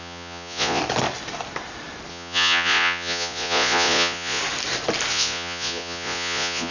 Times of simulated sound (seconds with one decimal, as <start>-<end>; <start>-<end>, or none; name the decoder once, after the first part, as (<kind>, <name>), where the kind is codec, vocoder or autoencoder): 0.0-0.8 (vocoder, Vocos); 2.1-4.4; 5.1-6.7